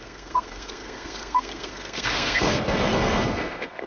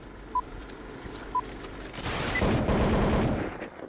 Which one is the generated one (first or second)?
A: first